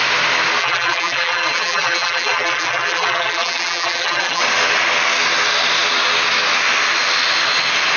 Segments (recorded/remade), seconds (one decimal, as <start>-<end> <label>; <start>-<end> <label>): 0.0-0.6 recorded; 0.6-4.4 remade; 4.4-8.0 recorded